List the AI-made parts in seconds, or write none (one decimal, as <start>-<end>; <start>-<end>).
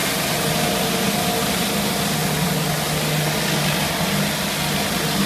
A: none